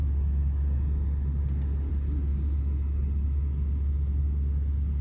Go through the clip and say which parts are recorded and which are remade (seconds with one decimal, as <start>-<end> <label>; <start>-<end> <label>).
0.0-5.0 recorded